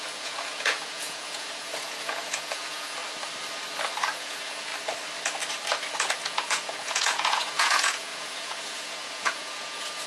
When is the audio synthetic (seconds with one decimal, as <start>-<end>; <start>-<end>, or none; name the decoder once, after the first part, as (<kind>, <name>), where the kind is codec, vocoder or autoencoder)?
0.0-3.0 (vocoder, Vocos); 4.0-4.7; 6.1-10.1